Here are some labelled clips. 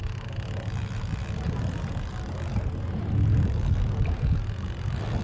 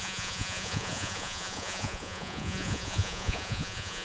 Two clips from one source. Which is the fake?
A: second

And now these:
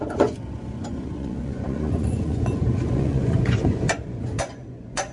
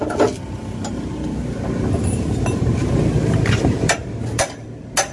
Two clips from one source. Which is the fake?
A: first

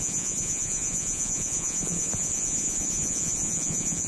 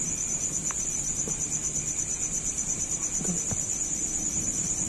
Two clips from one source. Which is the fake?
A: first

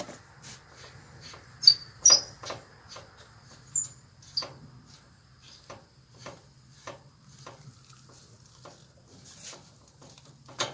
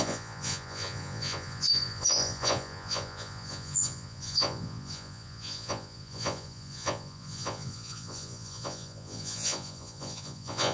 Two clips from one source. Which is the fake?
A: second